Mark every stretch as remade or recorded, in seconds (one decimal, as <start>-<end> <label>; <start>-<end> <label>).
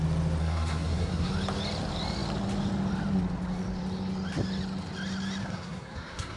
0.0-0.4 recorded; 0.4-1.3 remade; 1.3-5.4 recorded; 5.4-6.4 remade